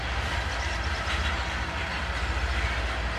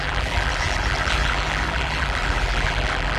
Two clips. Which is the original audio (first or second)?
first